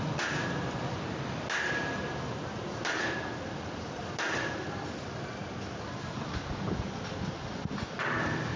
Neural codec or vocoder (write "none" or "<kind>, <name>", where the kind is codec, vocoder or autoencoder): none